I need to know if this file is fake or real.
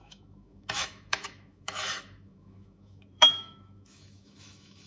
fake